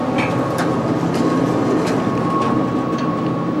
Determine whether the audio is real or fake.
real